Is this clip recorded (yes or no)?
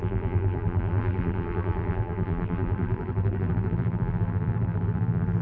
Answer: no